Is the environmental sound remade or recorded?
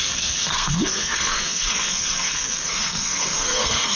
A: remade